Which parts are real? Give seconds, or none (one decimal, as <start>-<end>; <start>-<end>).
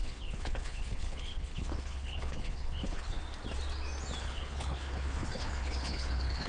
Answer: 3.2-4.2